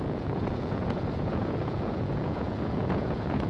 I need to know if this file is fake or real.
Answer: fake